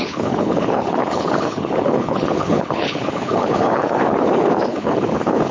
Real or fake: fake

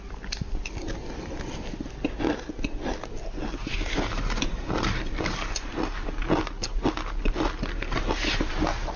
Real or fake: real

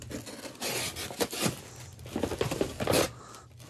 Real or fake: real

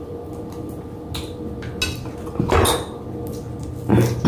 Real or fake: real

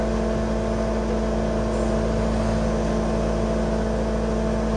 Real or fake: real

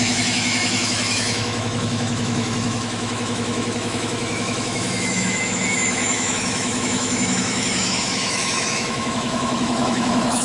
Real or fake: fake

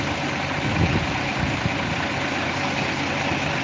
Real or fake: real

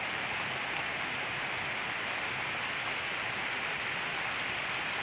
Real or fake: real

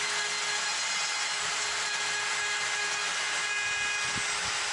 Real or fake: real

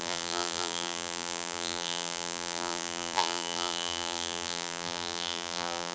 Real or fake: fake